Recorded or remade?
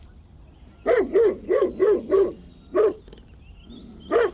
recorded